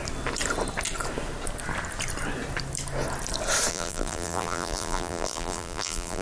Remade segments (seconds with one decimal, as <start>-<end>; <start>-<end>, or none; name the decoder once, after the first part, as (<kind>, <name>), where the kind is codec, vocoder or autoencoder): 3.7-6.2 (vocoder, BigVGAN v2)